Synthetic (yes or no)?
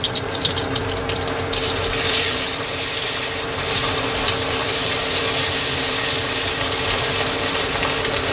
yes